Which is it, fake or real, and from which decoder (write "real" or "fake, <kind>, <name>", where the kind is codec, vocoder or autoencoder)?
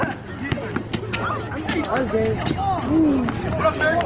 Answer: real